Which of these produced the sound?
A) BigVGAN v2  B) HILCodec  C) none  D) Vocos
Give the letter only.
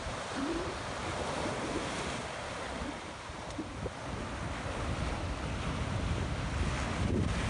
C